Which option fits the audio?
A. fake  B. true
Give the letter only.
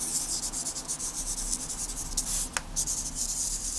B